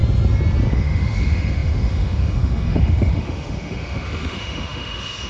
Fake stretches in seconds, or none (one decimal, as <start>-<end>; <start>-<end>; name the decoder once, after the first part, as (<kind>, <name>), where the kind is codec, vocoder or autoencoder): 0.7-5.3 (autoencoder, DAC-VAE)